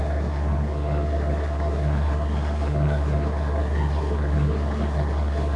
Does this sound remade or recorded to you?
remade